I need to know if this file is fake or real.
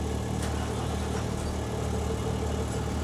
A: real